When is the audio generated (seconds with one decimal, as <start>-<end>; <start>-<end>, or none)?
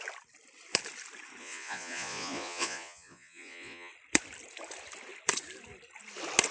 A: 1.4-3.9